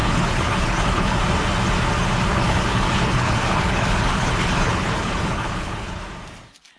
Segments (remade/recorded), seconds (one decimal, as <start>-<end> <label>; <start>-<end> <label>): 0.0-1.2 remade; 1.2-2.3 recorded; 2.3-6.0 remade; 6.0-6.8 recorded